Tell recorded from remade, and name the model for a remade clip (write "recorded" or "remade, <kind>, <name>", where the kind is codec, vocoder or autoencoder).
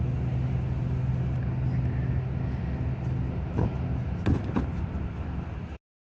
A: recorded